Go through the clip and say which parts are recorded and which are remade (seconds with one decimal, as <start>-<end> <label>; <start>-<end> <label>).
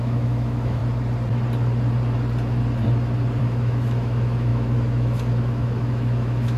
0.0-0.8 remade; 0.8-3.4 recorded; 3.4-6.6 remade